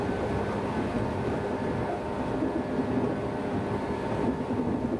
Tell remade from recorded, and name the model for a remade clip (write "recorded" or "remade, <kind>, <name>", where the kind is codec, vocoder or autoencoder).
recorded